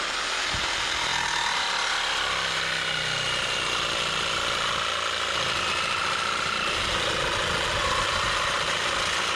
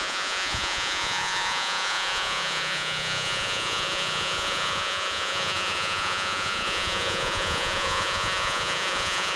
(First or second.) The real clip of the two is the first